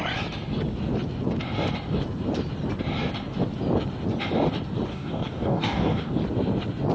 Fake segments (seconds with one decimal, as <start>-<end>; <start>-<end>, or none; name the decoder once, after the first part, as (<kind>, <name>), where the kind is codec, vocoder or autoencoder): 4.9-6.1 (codec, DAC)

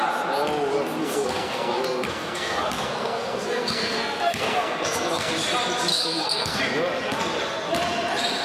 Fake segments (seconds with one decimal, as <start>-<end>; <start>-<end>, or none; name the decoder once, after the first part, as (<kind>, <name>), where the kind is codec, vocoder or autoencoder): 1.0-5.3 (codec, SNAC); 5.9-6.6

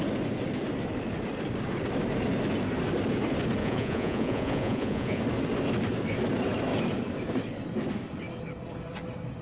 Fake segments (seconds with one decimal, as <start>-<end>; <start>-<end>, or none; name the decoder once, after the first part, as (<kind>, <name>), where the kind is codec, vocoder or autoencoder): 3.6-5.2 (vocoder, Vocos)

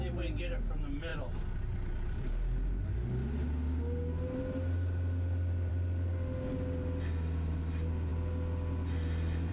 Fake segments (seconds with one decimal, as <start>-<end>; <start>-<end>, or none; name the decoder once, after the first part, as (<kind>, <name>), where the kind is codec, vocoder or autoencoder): none

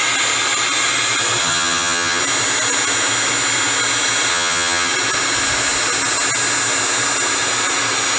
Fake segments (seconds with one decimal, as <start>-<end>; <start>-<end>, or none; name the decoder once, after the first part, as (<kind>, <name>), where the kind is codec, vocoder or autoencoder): 1.4-2.2 (vocoder, HiFi-GAN); 4.3-4.9